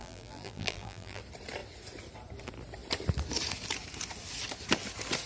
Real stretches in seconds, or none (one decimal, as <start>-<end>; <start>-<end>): 1.2-5.3